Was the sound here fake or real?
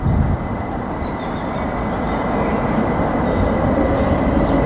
real